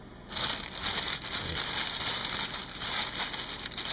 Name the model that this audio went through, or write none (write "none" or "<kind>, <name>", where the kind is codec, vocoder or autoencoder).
none